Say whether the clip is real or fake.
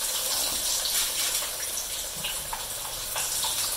fake